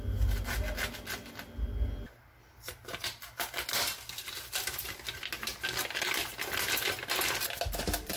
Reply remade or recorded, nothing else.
recorded